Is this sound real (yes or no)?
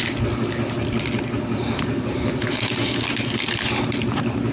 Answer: yes